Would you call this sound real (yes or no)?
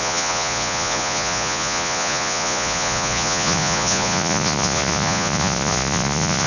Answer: no